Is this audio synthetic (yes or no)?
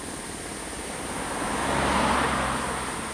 no